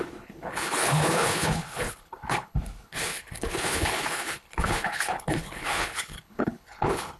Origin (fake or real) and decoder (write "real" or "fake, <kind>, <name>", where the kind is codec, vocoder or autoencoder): fake, codec, HILCodec